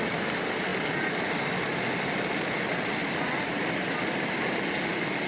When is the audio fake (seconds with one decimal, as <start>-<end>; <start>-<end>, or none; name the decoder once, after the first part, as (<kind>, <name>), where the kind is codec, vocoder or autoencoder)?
none